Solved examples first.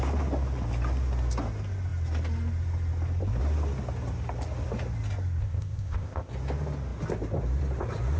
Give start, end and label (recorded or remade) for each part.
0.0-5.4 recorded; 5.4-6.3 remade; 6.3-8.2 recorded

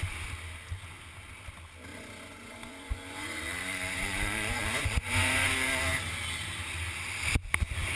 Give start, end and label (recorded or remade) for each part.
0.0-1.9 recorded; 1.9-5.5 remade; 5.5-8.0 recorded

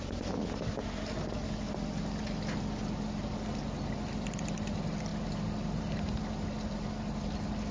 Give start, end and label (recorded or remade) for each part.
0.0-7.7 recorded

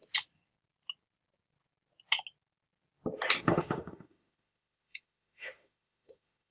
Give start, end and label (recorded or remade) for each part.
0.0-3.4 recorded; 3.4-6.5 remade

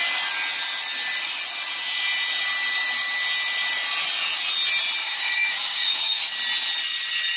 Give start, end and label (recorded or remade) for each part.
0.0-5.0 recorded; 5.0-6.2 remade; 6.2-7.4 recorded

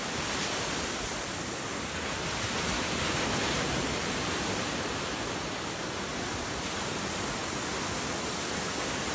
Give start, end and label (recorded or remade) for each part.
0.0-7.4 remade; 7.4-8.3 recorded; 8.3-9.1 remade